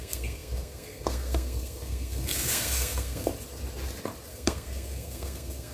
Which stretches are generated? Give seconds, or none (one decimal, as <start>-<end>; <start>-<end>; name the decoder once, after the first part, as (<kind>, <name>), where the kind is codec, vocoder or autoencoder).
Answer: 0.0-3.3 (codec, SNAC); 4.3-5.7